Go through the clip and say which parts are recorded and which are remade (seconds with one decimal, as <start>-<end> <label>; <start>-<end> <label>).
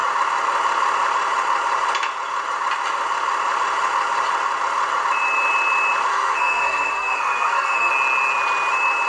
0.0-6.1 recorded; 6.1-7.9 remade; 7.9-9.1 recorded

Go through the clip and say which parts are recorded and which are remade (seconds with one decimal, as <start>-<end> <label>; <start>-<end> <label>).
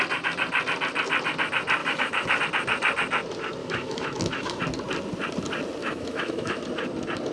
0.0-1.8 recorded; 1.8-2.4 remade; 2.4-3.6 recorded; 3.6-4.6 remade; 4.6-5.8 recorded; 5.8-6.6 remade; 6.6-7.3 recorded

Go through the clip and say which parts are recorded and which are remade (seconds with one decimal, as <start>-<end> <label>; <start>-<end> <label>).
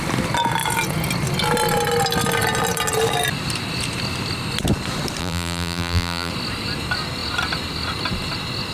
0.0-5.2 recorded; 5.2-6.3 remade; 6.3-8.7 recorded